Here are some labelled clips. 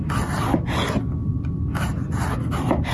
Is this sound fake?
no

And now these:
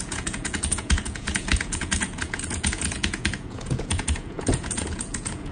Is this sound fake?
yes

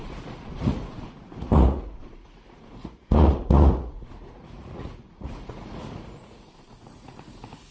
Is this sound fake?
yes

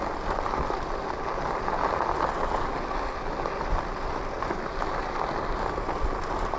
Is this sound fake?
no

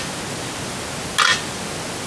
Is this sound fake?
no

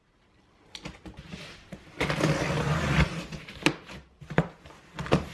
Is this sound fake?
no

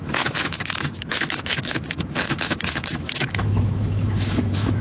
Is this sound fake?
yes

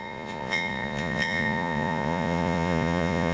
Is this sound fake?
yes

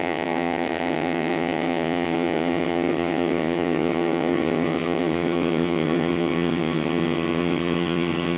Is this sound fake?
yes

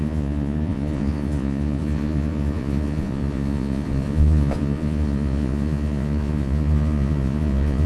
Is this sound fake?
yes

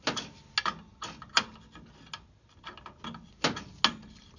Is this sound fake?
no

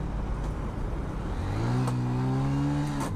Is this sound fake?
no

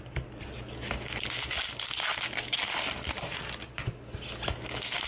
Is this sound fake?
no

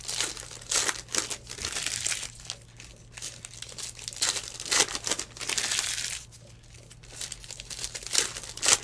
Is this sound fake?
no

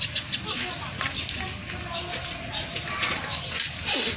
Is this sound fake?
no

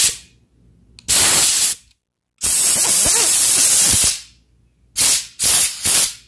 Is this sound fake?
no